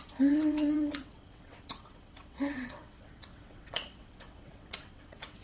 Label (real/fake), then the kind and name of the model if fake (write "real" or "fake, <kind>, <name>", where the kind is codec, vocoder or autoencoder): fake, vocoder, WaveNeXt